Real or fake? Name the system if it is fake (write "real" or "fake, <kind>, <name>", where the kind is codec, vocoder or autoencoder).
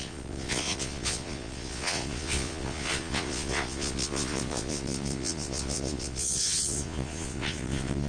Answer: fake, vocoder, Vocos